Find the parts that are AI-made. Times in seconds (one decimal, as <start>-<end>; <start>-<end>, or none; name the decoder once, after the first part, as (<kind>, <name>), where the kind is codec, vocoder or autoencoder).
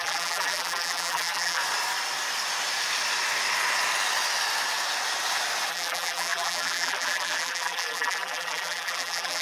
0.0-1.6 (vocoder, BigVGAN v2); 5.7-9.4